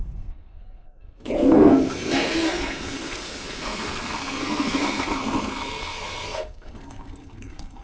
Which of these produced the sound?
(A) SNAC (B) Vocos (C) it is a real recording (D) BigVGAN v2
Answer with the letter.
A